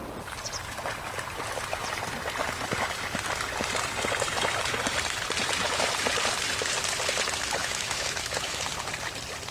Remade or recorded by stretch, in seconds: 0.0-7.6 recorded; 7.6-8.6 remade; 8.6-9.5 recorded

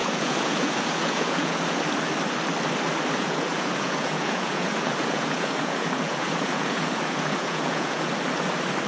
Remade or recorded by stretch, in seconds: 0.0-1.8 remade; 1.8-3.2 recorded; 3.2-8.1 remade; 8.1-8.9 recorded

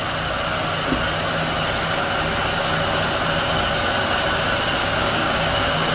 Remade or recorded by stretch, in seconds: 0.0-4.8 recorded; 4.8-5.9 remade